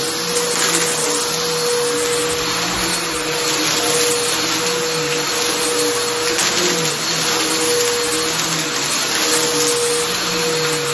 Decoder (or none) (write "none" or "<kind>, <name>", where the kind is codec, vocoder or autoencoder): none